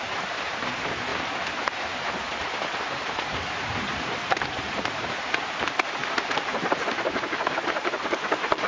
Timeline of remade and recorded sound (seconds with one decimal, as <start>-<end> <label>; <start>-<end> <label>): 0.0-1.1 remade; 1.1-2.0 recorded; 2.0-8.7 remade